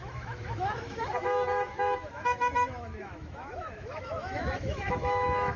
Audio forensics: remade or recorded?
remade